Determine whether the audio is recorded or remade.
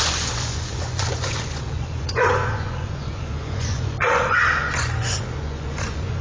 remade